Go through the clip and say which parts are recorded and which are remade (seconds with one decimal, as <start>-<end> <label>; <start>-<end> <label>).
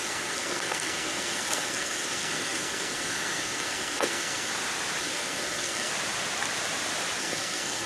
0.0-4.5 remade; 4.5-5.0 recorded; 5.0-5.9 remade; 5.9-7.2 recorded; 7.2-7.9 remade